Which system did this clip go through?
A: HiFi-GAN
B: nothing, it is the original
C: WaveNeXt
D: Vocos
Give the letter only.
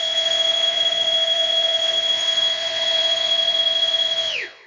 C